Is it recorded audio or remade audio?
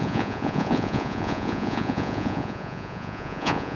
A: remade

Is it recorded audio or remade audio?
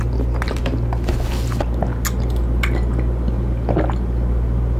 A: recorded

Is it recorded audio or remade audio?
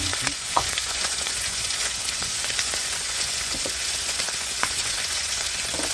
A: remade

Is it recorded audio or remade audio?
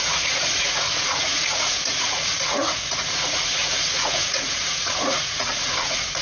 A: remade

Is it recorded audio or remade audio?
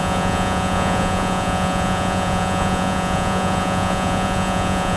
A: remade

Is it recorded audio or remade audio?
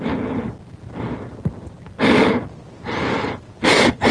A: recorded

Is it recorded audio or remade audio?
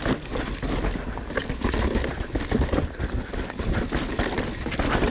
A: recorded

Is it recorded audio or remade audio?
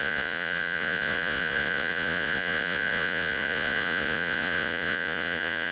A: remade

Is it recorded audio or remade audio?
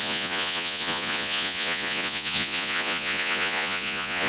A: remade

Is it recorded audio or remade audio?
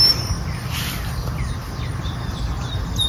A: recorded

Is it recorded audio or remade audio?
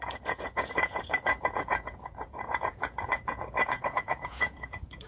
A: remade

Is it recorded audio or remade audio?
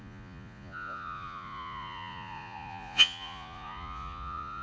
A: remade